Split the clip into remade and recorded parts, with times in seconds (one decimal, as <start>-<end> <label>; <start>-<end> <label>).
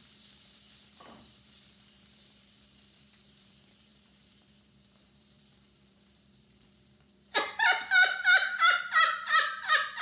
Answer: 0.0-10.0 remade